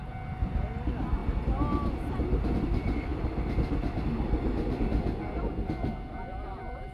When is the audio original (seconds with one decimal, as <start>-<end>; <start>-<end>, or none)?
0.0-6.9